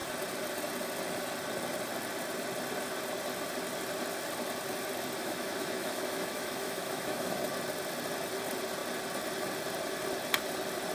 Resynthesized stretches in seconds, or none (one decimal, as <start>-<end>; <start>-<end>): 5.2-7.4